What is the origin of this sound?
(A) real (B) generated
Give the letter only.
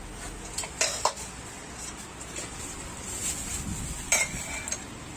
A